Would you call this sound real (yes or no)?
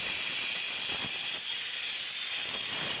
yes